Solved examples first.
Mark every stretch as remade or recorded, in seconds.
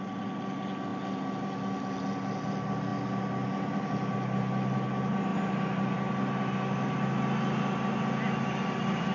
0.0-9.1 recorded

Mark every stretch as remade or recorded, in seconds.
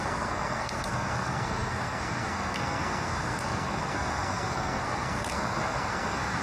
0.0-6.4 remade